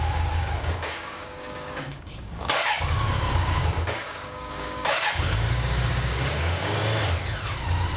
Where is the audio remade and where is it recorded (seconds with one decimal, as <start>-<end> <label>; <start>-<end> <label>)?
0.0-6.8 remade; 6.8-8.0 recorded